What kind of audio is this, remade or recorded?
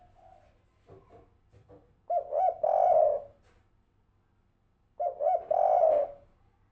recorded